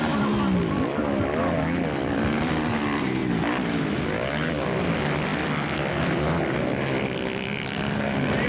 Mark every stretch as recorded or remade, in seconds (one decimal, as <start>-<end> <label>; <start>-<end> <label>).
0.0-8.5 recorded